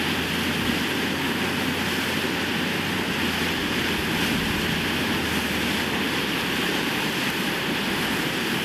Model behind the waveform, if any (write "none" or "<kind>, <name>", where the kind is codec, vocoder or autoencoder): none